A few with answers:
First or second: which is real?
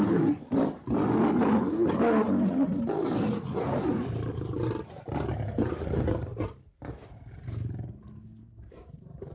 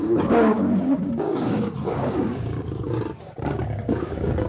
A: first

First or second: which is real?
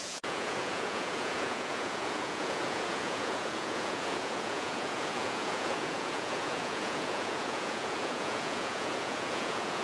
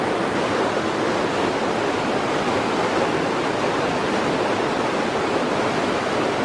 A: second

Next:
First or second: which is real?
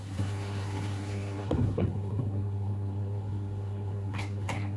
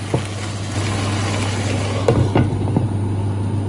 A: second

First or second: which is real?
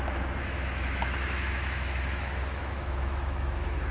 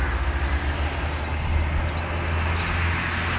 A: second